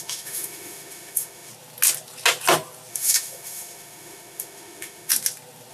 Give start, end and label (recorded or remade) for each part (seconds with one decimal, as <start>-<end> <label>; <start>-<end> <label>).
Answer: 0.0-1.5 remade; 1.5-2.9 recorded; 2.9-5.1 remade; 5.1-5.7 recorded